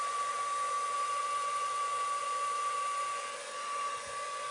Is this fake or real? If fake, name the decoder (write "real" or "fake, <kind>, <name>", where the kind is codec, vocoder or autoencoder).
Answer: fake, vocoder, Vocos